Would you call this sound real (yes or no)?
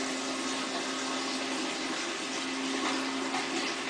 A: yes